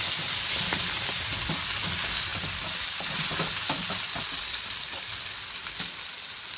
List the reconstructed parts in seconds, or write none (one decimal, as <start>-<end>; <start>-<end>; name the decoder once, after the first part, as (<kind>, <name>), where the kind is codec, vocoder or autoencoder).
none

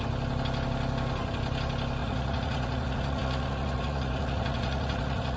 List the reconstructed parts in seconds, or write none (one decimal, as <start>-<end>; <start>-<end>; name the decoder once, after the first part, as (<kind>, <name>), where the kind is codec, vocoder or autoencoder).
2.0-5.4 (vocoder, Vocos)